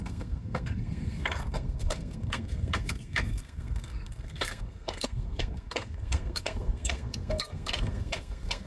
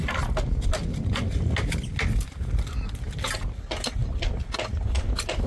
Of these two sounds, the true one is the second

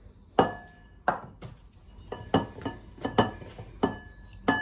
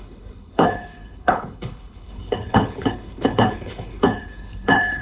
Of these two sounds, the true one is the first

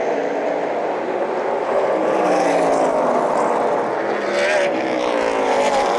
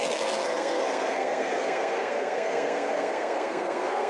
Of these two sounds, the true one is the first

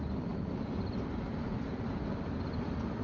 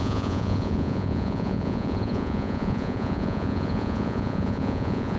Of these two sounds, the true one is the first